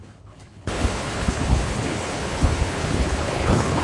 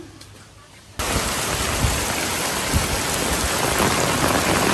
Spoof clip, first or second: first